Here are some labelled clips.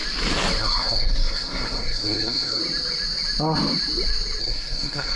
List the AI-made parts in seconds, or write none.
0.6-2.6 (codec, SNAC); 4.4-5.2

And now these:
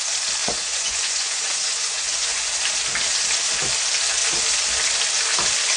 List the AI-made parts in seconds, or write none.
0.4-2.5 (vocoder, Vocos)

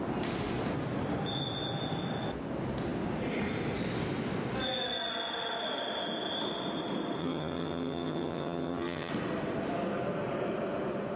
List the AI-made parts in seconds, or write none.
7.2-9.1 (vocoder, HiFi-GAN)